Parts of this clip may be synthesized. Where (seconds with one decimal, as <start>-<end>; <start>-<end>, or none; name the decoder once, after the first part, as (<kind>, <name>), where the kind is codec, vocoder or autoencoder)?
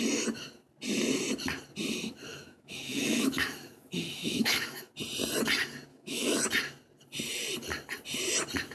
2.3-4.9 (autoencoder, DAC-VAE); 5.9-6.4